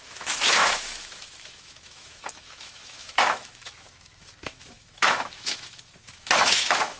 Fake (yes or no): yes